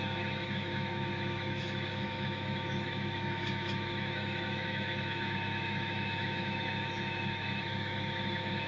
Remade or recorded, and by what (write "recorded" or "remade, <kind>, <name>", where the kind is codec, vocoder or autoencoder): remade, autoencoder, DAC-VAE